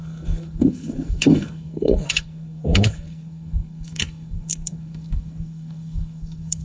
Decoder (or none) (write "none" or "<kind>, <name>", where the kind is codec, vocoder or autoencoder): codec, SNAC